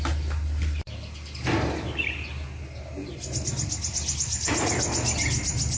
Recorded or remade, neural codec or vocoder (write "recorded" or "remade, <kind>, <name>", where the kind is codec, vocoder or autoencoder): recorded